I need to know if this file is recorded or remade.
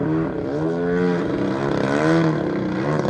recorded